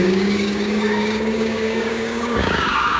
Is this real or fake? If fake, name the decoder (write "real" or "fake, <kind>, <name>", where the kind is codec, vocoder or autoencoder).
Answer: fake, codec, DAC